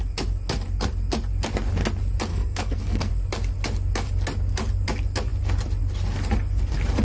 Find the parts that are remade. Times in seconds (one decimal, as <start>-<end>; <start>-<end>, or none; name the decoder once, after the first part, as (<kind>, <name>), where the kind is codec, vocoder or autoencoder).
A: 2.3-3.1 (codec, SNAC)